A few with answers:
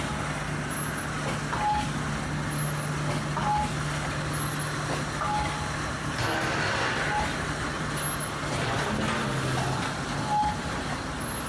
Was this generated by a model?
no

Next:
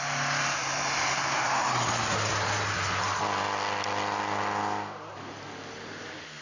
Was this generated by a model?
no